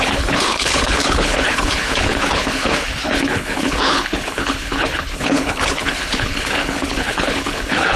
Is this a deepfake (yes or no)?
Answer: yes